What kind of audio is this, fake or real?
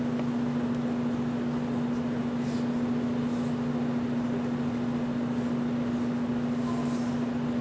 real